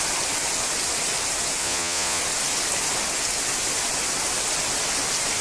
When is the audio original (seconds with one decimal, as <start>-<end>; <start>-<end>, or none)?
0.0-1.6; 2.2-5.4